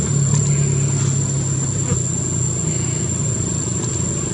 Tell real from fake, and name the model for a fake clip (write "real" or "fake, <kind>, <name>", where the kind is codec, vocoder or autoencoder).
real